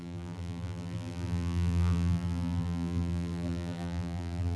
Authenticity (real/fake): fake